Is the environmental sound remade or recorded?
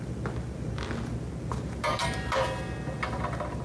recorded